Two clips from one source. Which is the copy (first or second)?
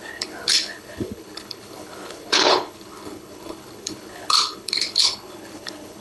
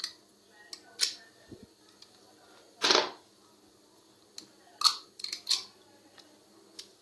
first